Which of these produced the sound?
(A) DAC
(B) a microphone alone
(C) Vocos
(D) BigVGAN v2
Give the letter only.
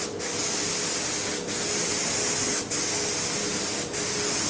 B